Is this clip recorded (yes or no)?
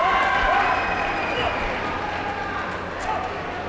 yes